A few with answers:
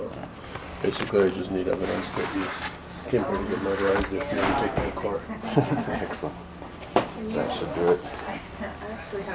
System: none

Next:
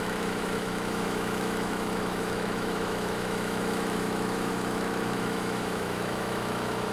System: autoencoder, DAC-VAE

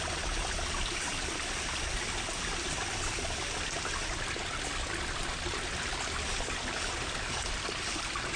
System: none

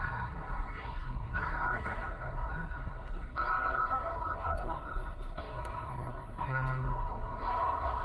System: codec, SNAC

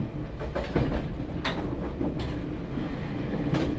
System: none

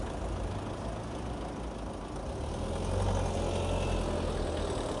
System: none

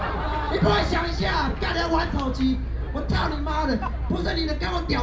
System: none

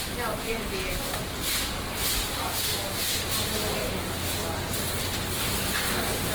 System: none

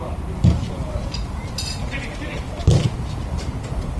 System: vocoder, BigVGAN v2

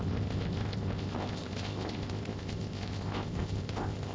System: codec, ZipCodec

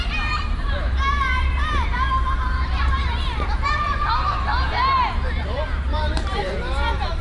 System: vocoder, BigVGAN v2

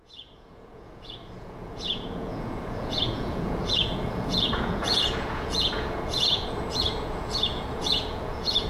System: vocoder, Vocos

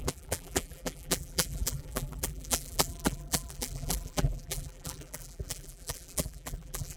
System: vocoder, BigVGAN v2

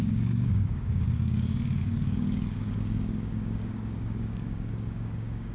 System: codec, DAC